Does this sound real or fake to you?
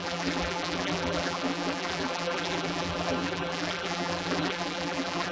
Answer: fake